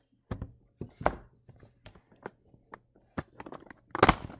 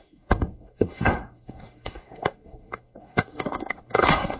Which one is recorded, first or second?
first